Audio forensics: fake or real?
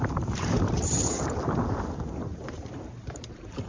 fake